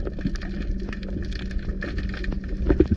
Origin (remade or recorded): recorded